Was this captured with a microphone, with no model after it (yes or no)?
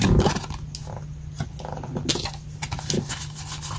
yes